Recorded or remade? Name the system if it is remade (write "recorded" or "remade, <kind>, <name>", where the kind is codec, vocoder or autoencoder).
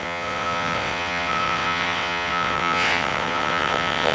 remade, vocoder, WaveNeXt